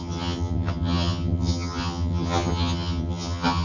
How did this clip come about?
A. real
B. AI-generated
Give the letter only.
B